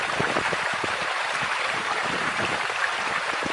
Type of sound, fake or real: fake